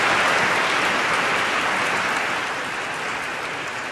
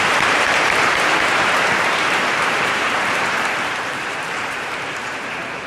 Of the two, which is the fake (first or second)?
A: second